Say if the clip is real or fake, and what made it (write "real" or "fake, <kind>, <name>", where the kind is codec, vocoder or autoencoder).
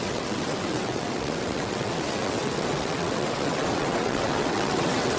fake, vocoder, WaveNeXt